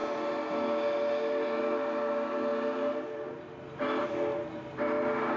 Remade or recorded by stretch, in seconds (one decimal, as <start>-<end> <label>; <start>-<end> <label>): 0.0-5.4 recorded